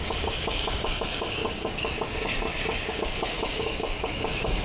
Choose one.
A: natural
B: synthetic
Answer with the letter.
B